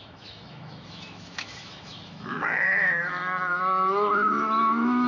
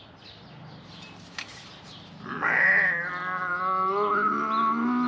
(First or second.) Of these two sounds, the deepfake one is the first